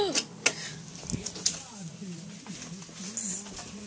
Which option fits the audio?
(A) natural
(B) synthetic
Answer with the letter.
A